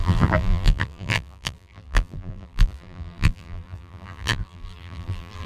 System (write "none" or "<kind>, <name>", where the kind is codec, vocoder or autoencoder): vocoder, BigVGAN v2